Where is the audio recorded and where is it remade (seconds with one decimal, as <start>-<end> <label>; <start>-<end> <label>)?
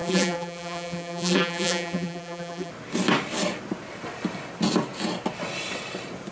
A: 0.0-2.7 remade; 2.7-6.3 recorded